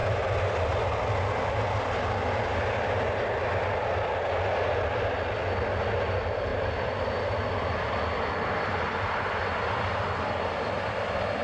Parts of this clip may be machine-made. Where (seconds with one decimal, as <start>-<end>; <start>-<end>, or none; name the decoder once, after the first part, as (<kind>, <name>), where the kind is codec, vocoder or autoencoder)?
none